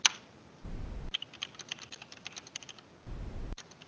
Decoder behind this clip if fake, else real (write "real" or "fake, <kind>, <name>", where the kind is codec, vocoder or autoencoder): real